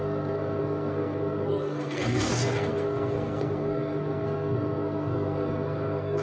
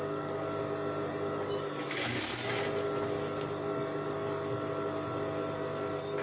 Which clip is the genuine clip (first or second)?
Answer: second